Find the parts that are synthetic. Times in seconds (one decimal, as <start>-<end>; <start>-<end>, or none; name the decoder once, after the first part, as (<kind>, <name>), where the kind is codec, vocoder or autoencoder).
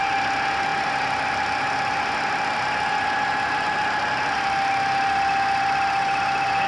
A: none